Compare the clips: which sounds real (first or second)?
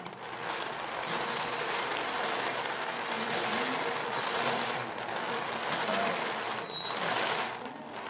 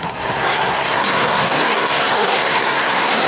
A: first